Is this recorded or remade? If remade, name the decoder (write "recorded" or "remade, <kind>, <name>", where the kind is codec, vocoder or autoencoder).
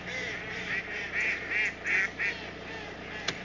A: recorded